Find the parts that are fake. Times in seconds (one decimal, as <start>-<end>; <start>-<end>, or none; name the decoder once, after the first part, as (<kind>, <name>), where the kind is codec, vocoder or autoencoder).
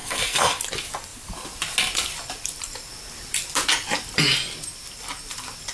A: 0.0-0.6 (codec, SNAC)